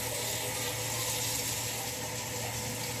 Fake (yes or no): no